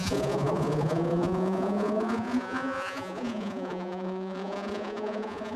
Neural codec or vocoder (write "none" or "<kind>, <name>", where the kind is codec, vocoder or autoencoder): vocoder, Vocos